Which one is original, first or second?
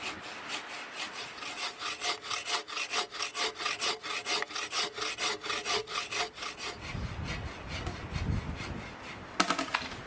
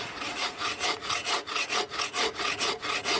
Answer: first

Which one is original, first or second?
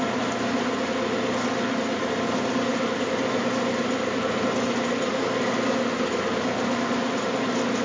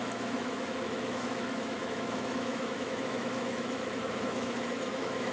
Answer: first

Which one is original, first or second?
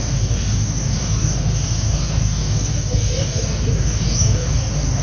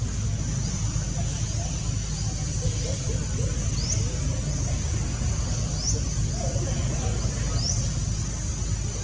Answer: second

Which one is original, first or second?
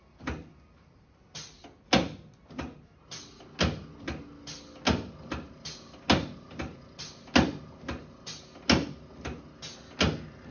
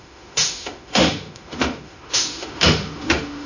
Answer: first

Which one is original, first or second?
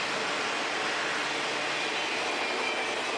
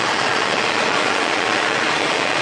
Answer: first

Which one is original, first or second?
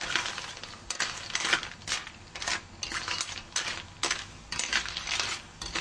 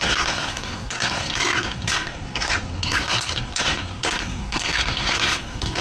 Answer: first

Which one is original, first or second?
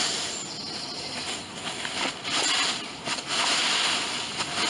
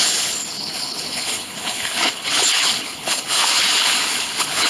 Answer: first